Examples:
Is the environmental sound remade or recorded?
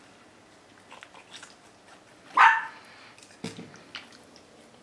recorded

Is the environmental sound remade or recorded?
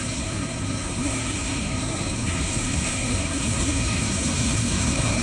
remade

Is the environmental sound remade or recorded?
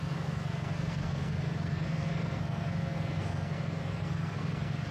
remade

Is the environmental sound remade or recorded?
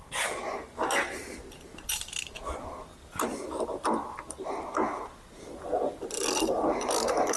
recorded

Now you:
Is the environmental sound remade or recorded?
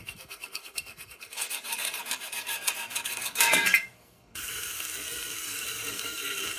remade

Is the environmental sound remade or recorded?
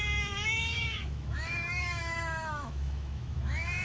remade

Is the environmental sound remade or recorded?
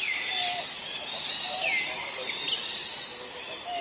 recorded